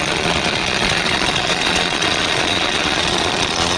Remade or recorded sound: remade